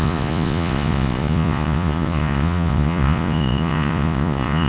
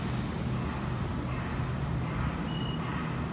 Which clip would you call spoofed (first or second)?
first